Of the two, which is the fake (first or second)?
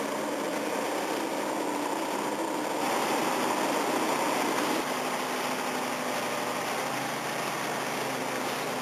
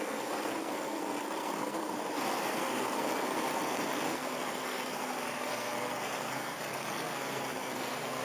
second